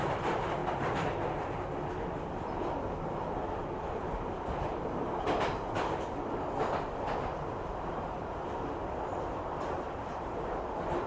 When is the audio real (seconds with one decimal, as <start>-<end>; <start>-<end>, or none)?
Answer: 0.6-3.6; 4.7-9.4